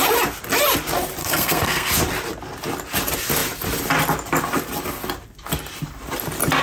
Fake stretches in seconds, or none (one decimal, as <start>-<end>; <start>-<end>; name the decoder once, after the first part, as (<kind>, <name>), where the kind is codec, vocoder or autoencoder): 1.2-1.9 (codec, SNAC)